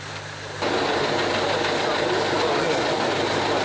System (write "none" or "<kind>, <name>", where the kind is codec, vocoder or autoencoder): none